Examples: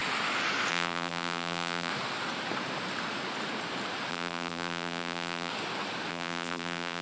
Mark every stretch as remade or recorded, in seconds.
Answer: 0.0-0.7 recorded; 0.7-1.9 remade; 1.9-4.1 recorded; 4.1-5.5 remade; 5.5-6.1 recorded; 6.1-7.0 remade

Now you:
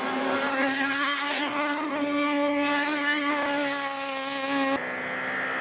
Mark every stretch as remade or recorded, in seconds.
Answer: 0.0-0.5 recorded; 0.5-3.3 remade; 3.3-5.6 recorded

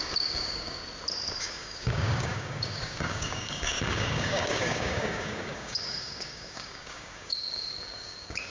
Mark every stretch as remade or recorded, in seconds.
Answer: 0.0-0.8 remade; 0.8-1.4 recorded; 1.4-8.5 remade

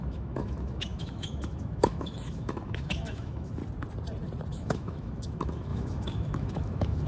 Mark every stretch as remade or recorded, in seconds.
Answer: 0.0-3.6 remade; 3.6-4.5 recorded; 4.5-7.1 remade

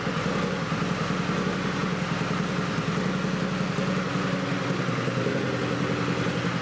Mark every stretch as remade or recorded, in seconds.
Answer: 0.0-6.6 recorded

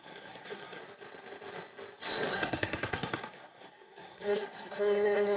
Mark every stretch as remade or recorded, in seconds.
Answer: 0.0-0.8 remade; 0.8-2.3 recorded; 2.3-5.4 remade